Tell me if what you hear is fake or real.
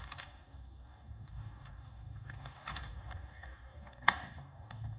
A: fake